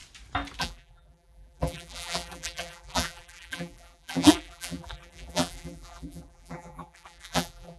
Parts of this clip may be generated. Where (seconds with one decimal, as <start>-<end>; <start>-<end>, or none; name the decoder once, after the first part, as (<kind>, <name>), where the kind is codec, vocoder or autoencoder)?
0.6-7.8 (vocoder, BigVGAN v2)